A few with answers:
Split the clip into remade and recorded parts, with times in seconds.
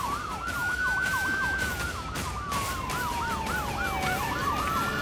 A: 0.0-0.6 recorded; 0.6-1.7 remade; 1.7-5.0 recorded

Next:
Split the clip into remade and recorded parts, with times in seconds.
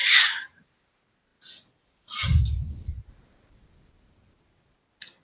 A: 0.0-0.8 remade; 0.8-5.2 recorded